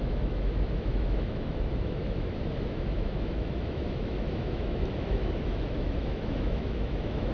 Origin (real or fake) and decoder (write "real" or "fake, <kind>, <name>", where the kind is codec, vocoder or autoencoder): fake, autoencoder, DAC-VAE